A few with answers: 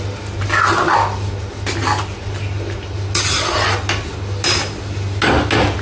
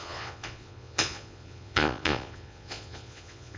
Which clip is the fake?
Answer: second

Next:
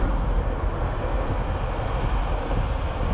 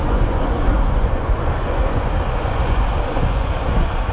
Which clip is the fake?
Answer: second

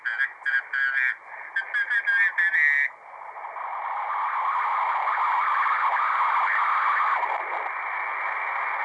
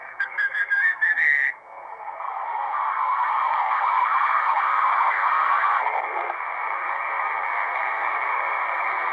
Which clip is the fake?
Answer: second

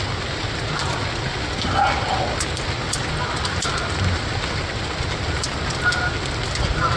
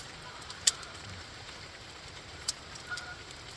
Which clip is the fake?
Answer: second